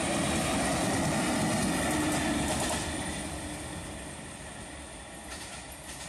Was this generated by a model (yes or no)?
no